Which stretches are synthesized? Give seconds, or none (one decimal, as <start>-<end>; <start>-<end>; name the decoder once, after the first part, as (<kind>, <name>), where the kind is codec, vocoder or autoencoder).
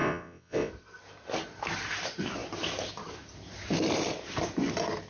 0.0-0.7 (vocoder, WaveNeXt)